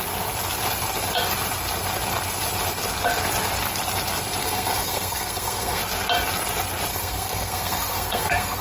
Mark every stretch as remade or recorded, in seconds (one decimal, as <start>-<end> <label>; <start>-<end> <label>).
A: 0.0-4.4 recorded; 4.4-5.8 remade; 5.8-6.9 recorded; 6.9-8.6 remade